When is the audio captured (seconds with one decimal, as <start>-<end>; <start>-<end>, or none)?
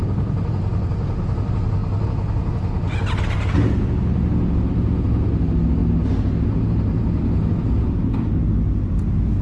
0.0-9.4